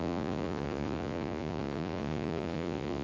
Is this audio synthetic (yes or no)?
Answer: yes